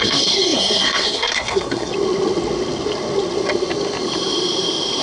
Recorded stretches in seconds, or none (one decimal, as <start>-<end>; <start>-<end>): 1.9-5.0